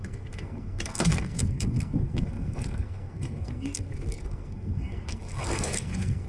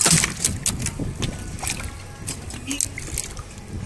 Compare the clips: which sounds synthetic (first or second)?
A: first